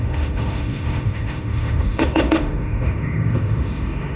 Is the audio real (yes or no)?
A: no